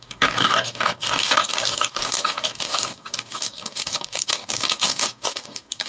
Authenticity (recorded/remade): remade